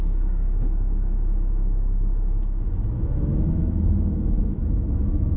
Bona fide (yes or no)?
no